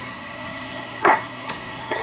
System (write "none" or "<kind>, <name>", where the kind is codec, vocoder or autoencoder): codec, SNAC